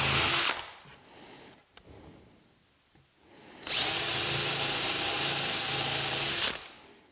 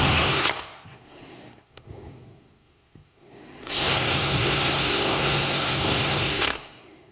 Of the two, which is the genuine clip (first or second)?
first